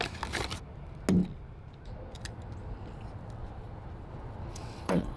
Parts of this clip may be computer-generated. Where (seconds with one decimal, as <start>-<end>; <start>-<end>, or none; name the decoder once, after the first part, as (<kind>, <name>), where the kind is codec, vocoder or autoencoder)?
4.5-5.2 (vocoder, WaveNeXt)